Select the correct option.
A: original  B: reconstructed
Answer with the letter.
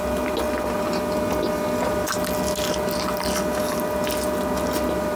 A